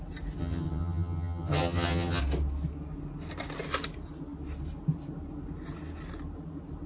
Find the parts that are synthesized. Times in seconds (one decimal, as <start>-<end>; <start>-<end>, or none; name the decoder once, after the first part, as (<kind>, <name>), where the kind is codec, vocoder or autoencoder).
0.4-2.2 (vocoder, HiFi-GAN)